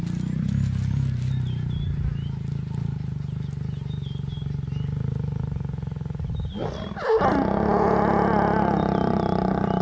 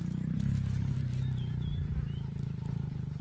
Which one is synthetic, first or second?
second